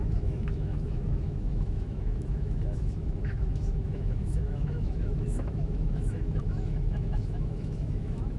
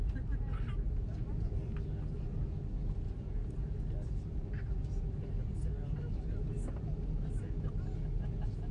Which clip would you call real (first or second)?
second